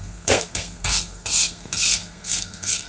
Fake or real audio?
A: fake